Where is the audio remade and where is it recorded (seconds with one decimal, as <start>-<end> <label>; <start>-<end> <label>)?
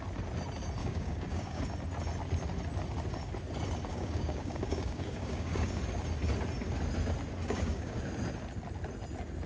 0.0-0.8 recorded; 0.8-1.6 remade; 1.6-3.9 recorded; 3.9-5.8 remade; 5.8-7.4 recorded; 7.4-8.0 remade; 8.0-9.5 recorded